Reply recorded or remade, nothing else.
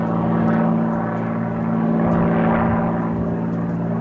recorded